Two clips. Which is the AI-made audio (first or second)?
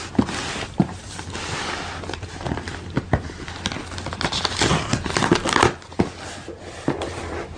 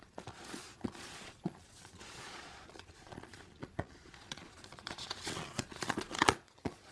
second